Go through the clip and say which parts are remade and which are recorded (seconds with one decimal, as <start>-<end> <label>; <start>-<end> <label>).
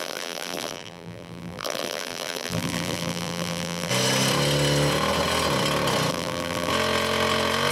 0.0-3.9 remade; 3.9-6.1 recorded; 6.1-6.7 remade; 6.7-7.7 recorded